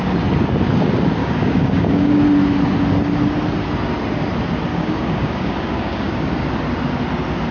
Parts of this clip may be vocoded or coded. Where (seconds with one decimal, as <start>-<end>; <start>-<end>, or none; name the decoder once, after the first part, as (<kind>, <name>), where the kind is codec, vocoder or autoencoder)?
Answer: 1.2-2.2 (codec, DAC); 4.7-6.3